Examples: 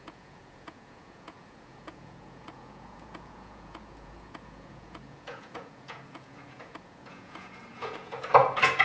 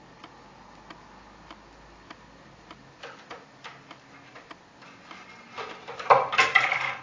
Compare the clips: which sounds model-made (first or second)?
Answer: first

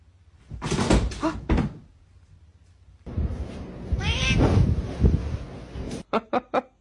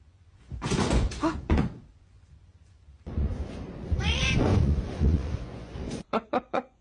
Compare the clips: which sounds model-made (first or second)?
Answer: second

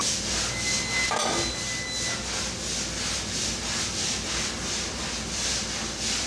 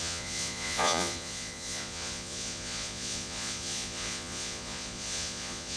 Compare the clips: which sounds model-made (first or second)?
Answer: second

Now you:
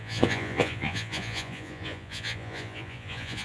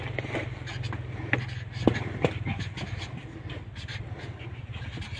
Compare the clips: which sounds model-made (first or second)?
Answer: first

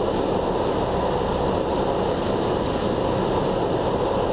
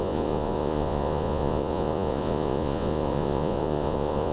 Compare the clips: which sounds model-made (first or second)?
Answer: second